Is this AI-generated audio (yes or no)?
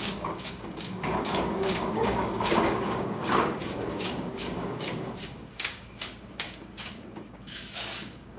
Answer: yes